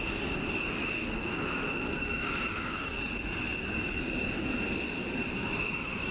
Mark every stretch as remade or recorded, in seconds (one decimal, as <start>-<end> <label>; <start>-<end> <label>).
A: 0.0-0.8 recorded; 0.8-3.1 remade; 3.1-6.1 recorded